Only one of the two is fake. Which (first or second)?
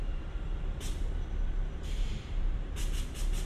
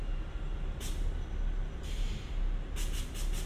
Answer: first